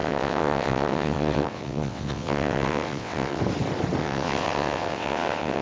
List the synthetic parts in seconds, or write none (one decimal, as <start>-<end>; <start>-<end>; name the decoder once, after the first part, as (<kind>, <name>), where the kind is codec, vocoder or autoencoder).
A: 0.0-3.4 (vocoder, WaveNeXt); 4.0-5.6